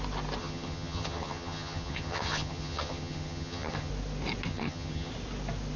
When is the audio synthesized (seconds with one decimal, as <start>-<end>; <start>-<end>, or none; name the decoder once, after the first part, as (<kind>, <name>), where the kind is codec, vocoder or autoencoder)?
0.4-3.9 (vocoder, HiFi-GAN); 4.5-5.1